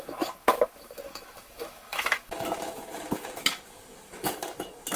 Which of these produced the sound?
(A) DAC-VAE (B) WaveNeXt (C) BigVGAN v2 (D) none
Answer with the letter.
A